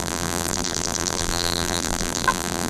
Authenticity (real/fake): fake